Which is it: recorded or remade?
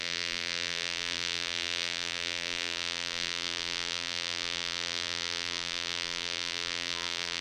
remade